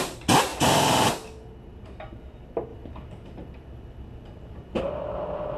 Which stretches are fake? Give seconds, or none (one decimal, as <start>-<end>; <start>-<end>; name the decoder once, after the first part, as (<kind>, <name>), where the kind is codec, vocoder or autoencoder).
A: 0.5-1.1 (vocoder, BigVGAN v2); 2.7-4.8